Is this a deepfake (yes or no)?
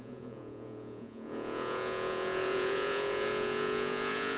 yes